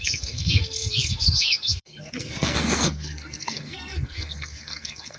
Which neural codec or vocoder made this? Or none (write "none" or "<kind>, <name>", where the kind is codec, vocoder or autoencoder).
codec, SNAC